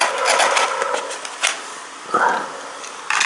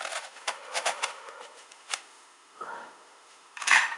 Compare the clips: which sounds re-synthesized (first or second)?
second